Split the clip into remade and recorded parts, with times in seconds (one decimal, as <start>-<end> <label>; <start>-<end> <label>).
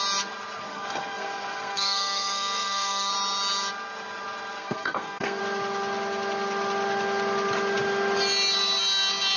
0.0-0.7 recorded; 0.7-3.1 remade; 3.1-4.6 recorded; 4.6-5.4 remade; 5.4-9.4 recorded